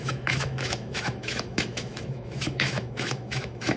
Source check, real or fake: fake